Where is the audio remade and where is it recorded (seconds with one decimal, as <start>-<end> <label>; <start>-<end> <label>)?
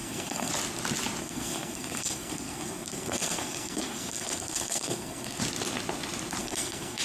0.0-0.5 remade; 0.5-1.2 recorded; 1.2-5.4 remade; 5.4-6.4 recorded; 6.4-7.0 remade